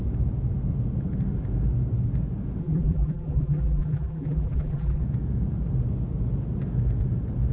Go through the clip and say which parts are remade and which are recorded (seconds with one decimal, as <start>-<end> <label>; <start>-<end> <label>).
0.0-2.6 recorded; 2.6-5.0 remade; 5.0-7.5 recorded